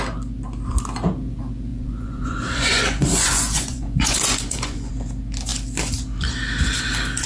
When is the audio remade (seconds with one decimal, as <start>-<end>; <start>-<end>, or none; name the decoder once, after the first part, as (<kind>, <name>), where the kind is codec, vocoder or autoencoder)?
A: 1.7-4.9 (vocoder, Vocos)